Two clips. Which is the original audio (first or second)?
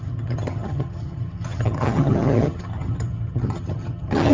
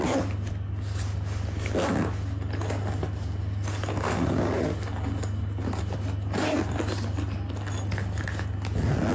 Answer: second